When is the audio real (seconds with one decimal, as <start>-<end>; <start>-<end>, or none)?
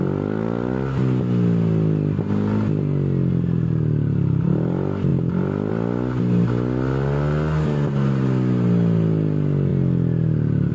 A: 0.0-10.7